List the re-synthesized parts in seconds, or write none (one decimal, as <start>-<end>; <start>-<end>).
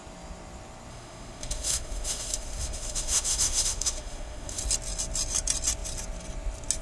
0.9-4.6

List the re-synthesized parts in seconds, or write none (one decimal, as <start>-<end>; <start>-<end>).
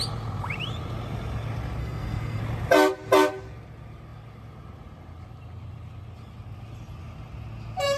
1.8-2.4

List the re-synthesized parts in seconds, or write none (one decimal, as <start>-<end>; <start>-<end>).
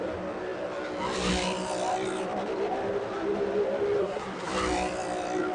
4.0-4.5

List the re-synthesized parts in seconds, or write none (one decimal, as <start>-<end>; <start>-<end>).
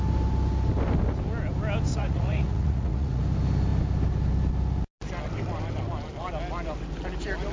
1.9-3.2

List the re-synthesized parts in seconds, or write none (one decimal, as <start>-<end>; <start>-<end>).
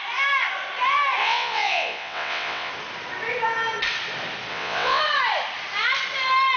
1.2-2.7; 4.5-5.0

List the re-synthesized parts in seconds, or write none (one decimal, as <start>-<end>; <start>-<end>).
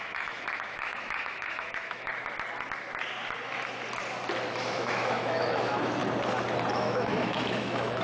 0.0-2.1; 4.5-6.0; 6.7-8.0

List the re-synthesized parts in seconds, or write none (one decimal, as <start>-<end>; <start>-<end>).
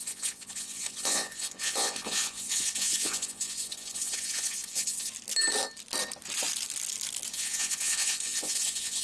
0.0-5.1; 7.3-9.0